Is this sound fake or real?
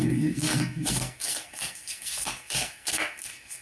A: fake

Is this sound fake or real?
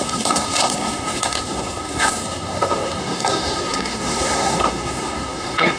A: fake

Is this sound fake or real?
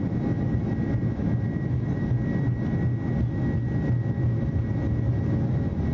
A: real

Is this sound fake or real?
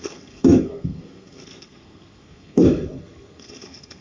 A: fake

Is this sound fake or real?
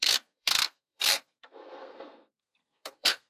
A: fake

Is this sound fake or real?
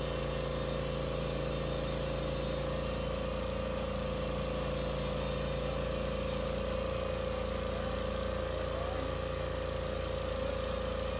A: real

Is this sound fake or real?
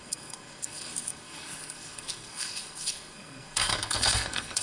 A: fake